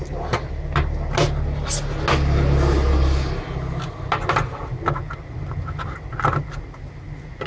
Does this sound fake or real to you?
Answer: real